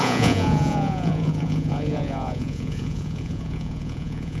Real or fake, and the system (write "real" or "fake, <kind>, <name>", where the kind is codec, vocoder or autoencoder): fake, vocoder, Vocos